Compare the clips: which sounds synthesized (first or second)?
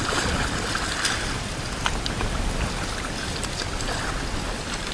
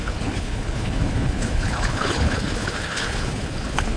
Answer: second